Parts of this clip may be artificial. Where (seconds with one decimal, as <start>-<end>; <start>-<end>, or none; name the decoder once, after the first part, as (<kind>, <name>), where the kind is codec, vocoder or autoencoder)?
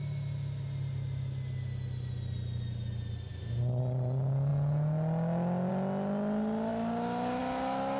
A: none